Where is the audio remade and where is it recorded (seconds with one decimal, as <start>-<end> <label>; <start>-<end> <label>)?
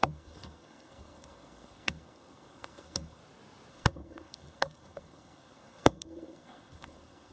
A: 0.0-3.2 remade; 3.2-3.7 recorded; 3.7-7.3 remade